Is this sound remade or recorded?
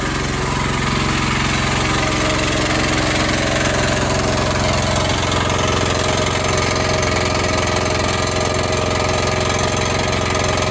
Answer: recorded